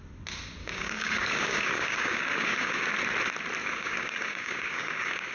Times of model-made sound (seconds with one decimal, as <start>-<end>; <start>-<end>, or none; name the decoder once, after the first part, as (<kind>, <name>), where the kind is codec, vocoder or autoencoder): 0.6-2.9 (codec, DAC); 3.6-5.3